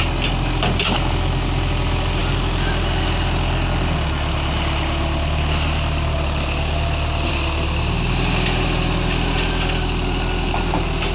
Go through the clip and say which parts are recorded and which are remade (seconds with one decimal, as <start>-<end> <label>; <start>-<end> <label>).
0.0-11.1 recorded